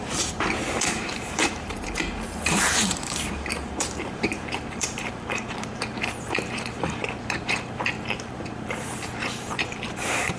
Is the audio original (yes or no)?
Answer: no